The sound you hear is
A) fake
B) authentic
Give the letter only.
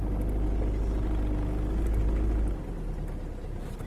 B